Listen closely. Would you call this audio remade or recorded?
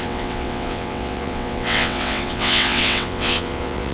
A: remade